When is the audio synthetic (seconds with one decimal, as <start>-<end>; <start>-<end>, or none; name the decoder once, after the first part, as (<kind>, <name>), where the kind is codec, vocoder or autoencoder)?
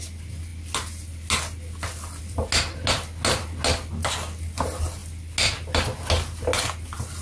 none